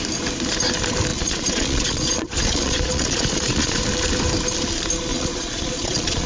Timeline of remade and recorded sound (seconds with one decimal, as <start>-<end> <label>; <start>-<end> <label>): 0.0-1.1 recorded; 1.1-3.8 remade; 3.8-5.1 recorded; 5.1-6.3 remade

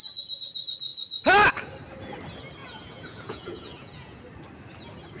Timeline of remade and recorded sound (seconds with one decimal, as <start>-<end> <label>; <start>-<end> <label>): 0.0-2.6 recorded; 2.6-4.2 remade; 4.2-5.2 recorded

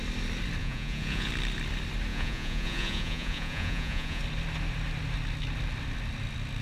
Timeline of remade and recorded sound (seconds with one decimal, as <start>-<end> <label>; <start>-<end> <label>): 0.0-0.6 recorded; 0.6-1.3 remade; 1.3-2.1 recorded; 2.1-4.2 remade; 4.2-6.6 recorded

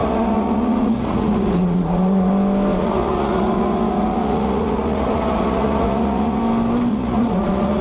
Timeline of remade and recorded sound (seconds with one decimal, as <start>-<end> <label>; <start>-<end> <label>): 0.0-2.3 remade; 2.3-2.7 recorded; 2.7-6.4 remade; 6.4-6.9 recorded; 6.9-7.8 remade

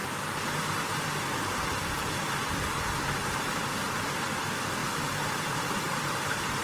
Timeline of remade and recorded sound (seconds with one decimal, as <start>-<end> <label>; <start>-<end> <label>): 0.0-6.6 recorded

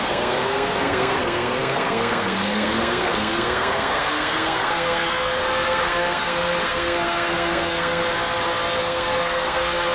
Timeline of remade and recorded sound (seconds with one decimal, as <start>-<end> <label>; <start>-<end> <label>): 0.0-8.0 remade; 8.0-8.8 recorded; 8.8-9.9 remade

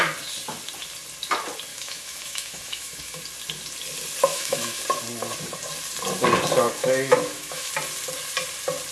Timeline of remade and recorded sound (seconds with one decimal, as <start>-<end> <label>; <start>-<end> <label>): 0.0-1.7 recorded; 1.7-3.2 remade; 3.2-4.3 recorded; 4.3-4.8 remade; 4.8-6.8 recorded; 6.8-7.7 remade; 7.7-8.9 recorded